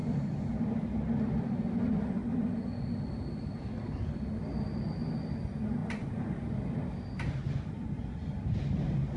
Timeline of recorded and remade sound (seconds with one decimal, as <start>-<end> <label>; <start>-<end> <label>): 0.0-9.2 recorded